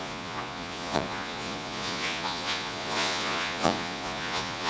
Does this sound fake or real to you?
fake